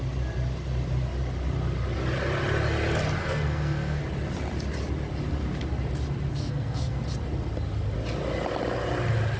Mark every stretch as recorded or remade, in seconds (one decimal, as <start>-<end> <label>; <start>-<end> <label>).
0.0-3.2 recorded; 3.2-4.0 remade; 4.0-6.3 recorded; 6.3-7.0 remade; 7.0-9.4 recorded